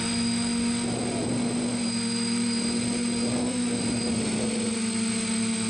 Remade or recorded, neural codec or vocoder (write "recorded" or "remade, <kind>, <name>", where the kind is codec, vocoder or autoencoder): recorded